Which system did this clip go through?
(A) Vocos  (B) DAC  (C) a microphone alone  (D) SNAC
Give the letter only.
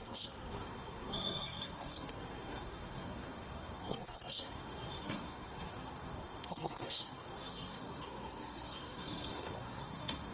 D